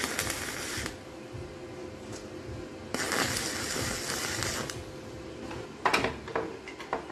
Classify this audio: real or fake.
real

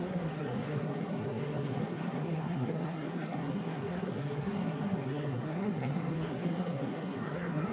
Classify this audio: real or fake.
fake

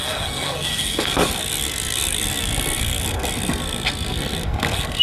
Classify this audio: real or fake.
fake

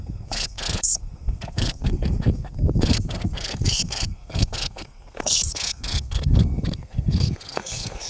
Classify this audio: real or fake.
fake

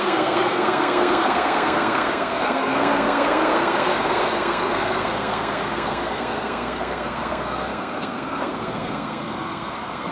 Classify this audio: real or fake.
fake